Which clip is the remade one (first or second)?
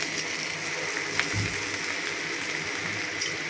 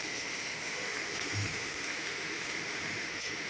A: second